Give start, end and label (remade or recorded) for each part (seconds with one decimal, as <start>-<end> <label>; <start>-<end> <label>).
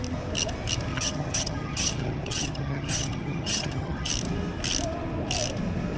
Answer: 0.0-0.9 recorded; 0.9-4.1 remade; 4.1-6.0 recorded